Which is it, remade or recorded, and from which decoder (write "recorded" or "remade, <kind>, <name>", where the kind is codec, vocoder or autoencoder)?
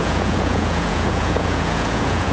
remade, vocoder, Vocos